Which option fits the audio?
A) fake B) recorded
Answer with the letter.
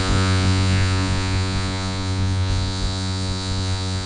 A